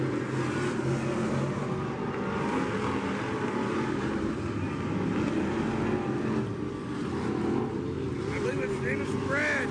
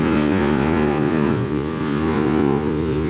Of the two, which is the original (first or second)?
first